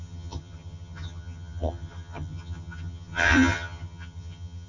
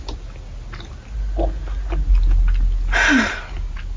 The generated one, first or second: first